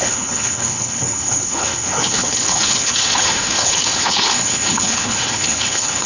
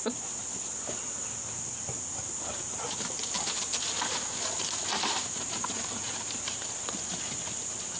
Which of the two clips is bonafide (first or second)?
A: second